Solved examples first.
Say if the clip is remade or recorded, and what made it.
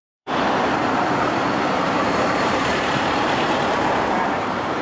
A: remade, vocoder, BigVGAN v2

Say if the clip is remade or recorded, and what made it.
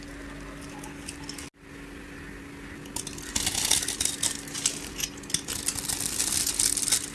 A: recorded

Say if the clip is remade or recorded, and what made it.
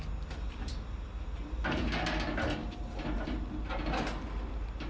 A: recorded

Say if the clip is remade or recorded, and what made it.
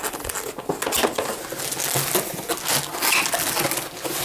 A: recorded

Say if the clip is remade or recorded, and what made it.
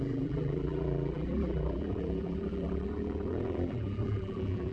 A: remade, vocoder, BigVGAN v2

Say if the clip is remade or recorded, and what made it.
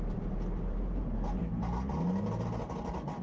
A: recorded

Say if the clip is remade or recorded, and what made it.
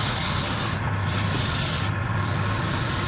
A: recorded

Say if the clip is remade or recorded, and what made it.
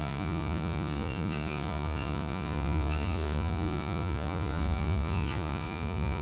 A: remade, vocoder, Vocos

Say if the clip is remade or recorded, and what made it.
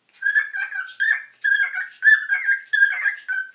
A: recorded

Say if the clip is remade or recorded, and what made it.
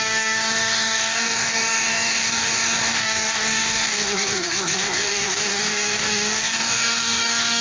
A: remade, codec, DAC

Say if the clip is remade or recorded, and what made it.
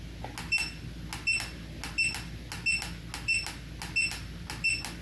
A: recorded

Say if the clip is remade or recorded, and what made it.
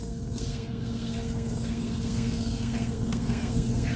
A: remade, codec, SNAC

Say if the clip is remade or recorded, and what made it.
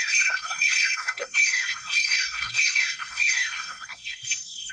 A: remade, codec, SNAC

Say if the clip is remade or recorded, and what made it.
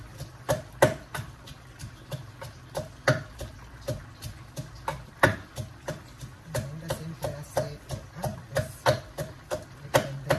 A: recorded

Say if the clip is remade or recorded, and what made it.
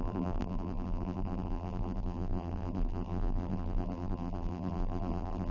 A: remade, vocoder, BigVGAN v2